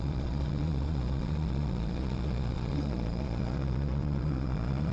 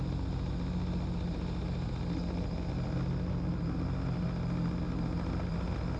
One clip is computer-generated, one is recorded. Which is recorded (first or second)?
second